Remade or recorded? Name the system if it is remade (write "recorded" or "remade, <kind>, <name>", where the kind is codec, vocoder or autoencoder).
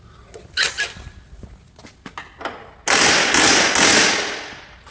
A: recorded